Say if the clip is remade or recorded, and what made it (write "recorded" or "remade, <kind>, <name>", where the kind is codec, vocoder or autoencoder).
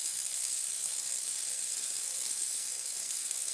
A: remade, codec, SNAC